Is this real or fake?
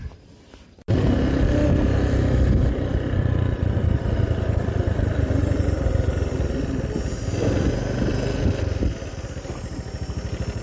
real